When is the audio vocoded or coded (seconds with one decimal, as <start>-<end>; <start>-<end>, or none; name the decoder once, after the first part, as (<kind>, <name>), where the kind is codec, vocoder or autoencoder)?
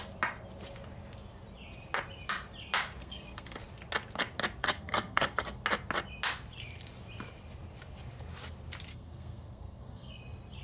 3.0-3.6 (codec, SNAC); 4.6-5.6; 8.9-10.2